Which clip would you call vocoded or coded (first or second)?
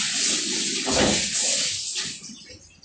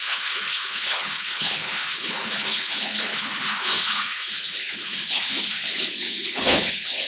second